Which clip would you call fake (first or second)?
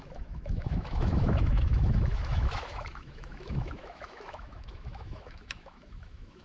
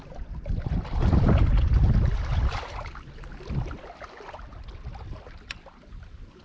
first